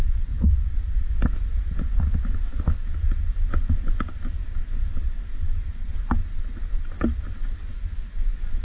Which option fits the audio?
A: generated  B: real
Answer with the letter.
B